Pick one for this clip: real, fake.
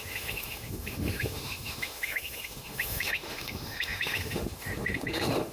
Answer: fake